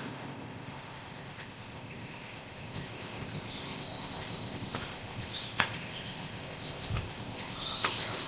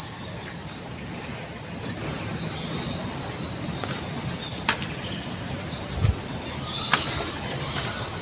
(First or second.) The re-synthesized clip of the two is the first